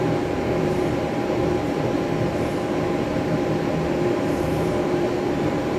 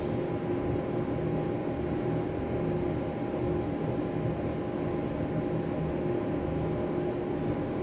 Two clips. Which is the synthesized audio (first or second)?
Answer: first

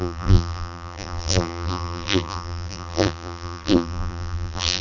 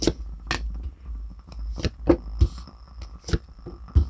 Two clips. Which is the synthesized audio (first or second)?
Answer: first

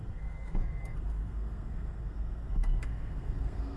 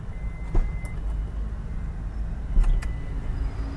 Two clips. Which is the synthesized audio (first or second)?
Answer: first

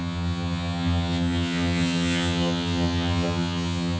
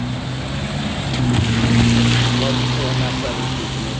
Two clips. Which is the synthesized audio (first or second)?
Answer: first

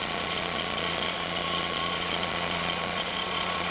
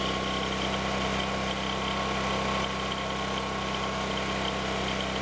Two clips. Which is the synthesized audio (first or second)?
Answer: first